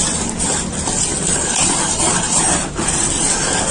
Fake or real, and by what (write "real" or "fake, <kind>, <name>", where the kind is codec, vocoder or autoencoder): real